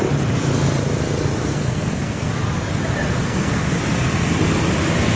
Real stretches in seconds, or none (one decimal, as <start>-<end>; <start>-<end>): 0.0-1.5; 2.3-3.2; 3.7-5.2